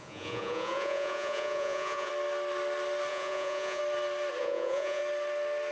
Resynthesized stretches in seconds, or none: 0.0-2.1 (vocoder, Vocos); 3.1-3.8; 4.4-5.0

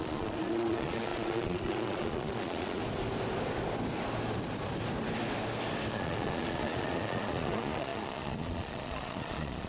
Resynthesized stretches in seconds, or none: 0.0-2.8 (vocoder, Vocos); 5.9-9.7